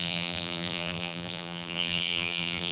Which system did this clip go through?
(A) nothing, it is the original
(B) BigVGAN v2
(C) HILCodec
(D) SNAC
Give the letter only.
B